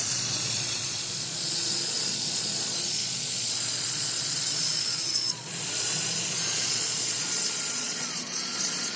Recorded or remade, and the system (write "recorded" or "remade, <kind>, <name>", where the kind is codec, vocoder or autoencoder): remade, vocoder, Vocos